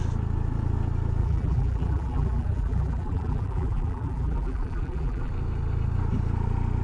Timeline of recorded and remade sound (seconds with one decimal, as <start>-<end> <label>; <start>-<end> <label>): 0.0-1.2 recorded; 1.2-5.3 remade; 5.3-6.8 recorded